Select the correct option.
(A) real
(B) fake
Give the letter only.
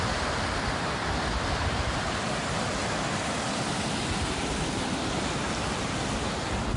A